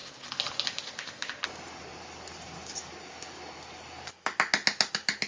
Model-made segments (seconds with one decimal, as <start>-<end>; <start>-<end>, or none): none